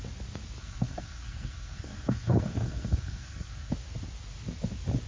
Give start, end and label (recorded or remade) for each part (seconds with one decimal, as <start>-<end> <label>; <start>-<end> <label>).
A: 0.0-0.6 recorded; 0.6-3.7 remade; 3.7-5.1 recorded